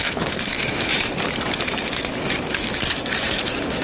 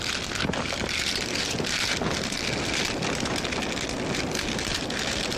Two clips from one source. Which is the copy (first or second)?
first